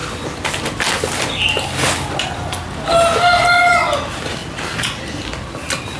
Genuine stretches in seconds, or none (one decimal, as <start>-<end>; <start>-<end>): 0.0-6.0